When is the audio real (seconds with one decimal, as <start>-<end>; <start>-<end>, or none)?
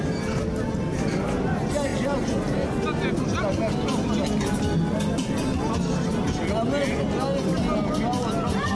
0.0-8.7